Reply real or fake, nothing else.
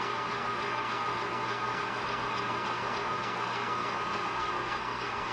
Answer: fake